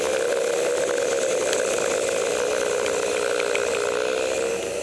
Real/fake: real